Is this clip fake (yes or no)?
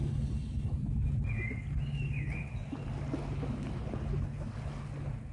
no